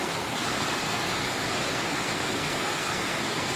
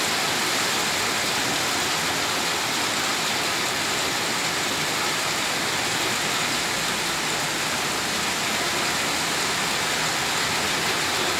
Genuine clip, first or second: second